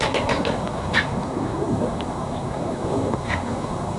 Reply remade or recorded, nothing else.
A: remade